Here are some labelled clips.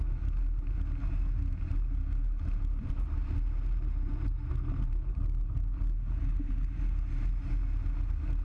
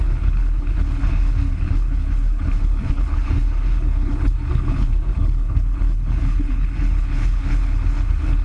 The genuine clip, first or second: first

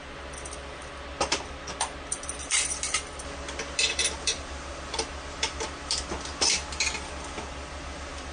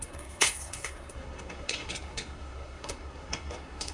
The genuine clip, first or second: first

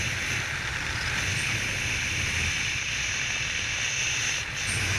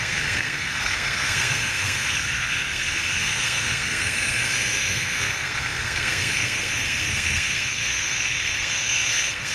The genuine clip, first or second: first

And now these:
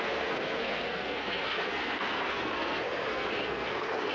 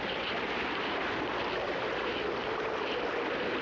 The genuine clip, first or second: second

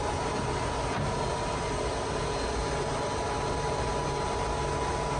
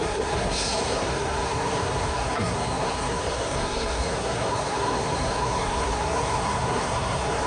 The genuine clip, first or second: first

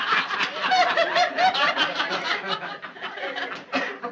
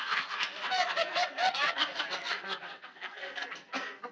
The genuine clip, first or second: first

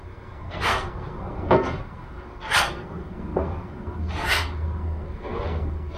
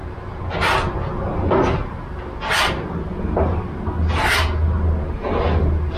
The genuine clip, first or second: second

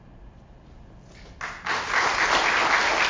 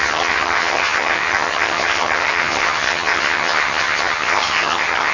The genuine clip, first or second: first